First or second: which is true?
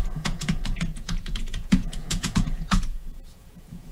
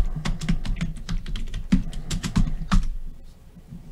second